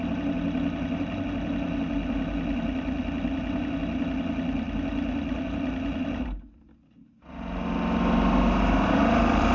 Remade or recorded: recorded